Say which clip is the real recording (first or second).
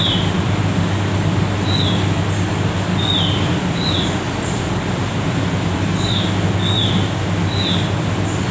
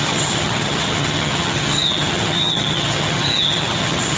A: first